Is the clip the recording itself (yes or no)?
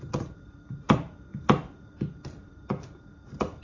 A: no